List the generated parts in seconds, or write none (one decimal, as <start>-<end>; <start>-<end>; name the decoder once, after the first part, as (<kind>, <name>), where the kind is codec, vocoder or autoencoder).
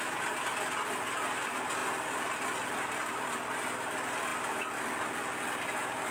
none